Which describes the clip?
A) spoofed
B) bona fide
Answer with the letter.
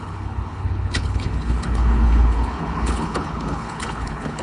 A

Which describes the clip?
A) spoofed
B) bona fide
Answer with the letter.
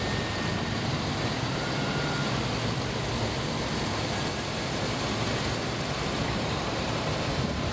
B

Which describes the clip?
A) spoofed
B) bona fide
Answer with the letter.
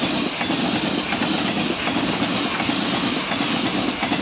B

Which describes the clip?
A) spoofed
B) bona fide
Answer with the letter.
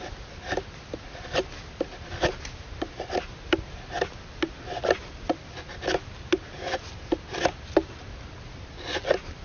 B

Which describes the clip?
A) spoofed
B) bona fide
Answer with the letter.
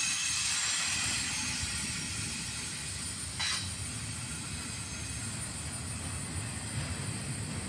B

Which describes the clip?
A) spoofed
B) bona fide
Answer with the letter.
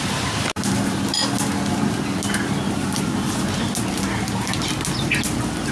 B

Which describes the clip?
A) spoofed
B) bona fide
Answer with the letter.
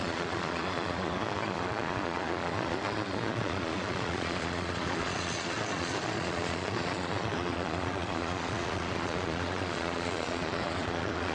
A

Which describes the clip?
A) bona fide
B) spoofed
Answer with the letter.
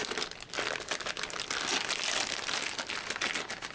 A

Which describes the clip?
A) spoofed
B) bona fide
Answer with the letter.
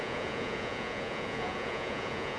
A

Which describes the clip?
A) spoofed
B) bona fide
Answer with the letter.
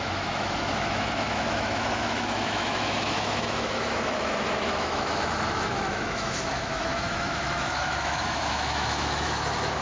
A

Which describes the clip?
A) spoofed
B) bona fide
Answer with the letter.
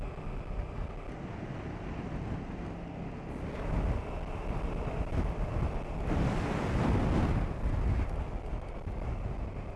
B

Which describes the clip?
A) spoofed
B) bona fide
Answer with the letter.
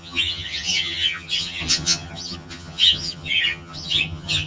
A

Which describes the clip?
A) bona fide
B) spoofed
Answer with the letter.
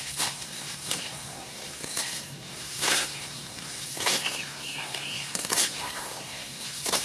B